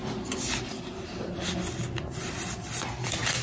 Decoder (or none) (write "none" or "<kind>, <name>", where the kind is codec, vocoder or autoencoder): none